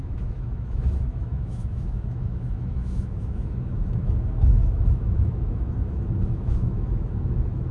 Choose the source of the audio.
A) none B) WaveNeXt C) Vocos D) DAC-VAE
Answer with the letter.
D